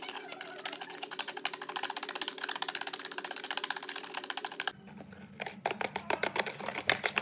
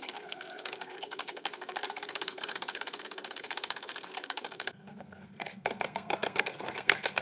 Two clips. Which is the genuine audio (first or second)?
first